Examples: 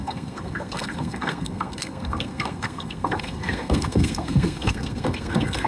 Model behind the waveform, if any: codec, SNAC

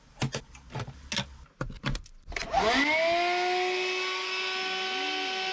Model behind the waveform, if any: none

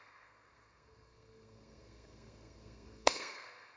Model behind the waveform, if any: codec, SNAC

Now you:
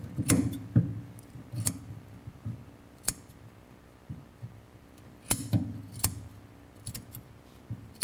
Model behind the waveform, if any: none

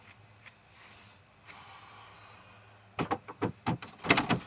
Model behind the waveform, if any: none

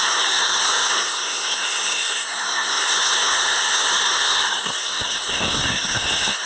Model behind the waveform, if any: codec, SNAC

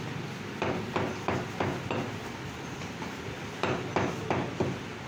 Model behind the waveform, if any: none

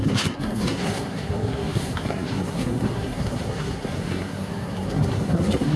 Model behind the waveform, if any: codec, SNAC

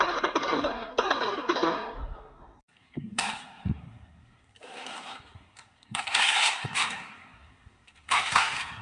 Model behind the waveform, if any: codec, SNAC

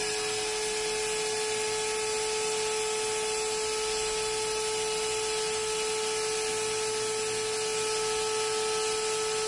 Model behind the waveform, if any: none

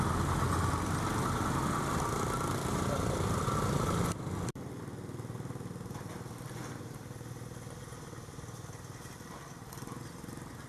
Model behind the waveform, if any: none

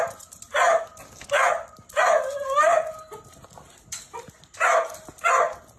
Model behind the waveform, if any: none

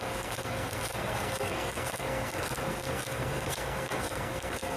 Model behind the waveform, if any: codec, SNAC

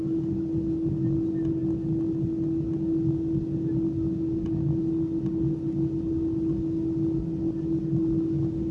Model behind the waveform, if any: none